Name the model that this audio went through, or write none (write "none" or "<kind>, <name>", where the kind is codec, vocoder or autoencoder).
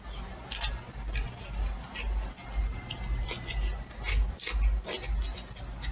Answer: none